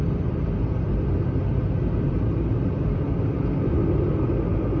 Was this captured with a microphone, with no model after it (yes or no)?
yes